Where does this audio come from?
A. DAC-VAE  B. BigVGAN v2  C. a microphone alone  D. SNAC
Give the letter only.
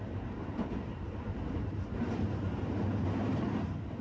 B